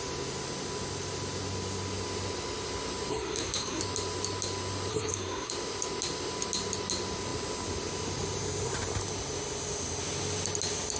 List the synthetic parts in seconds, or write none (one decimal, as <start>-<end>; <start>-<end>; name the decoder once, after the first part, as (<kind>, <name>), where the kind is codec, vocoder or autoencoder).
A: 3.1-3.8 (codec, SNAC); 4.9-5.5